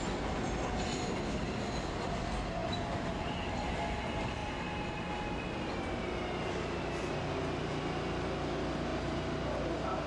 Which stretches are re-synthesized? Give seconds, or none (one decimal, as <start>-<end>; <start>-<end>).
8.9-10.1

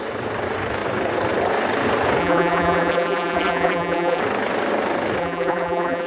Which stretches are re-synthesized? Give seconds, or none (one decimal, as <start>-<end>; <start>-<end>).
2.2-4.2; 5.2-6.1

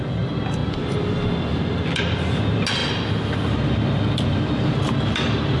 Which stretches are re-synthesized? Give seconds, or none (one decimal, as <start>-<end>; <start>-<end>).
none

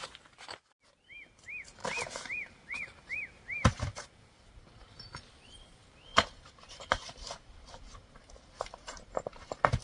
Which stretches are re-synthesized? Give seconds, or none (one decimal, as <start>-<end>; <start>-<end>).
1.8-3.3; 3.7-4.9; 6.1-9.1

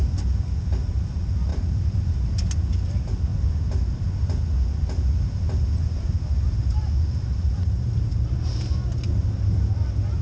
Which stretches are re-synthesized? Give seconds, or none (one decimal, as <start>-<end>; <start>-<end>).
1.5-2.5; 6.8-8.7